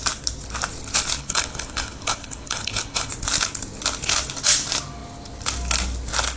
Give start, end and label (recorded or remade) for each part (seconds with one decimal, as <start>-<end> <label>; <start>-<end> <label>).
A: 0.0-1.2 recorded; 1.2-3.1 remade; 3.1-6.4 recorded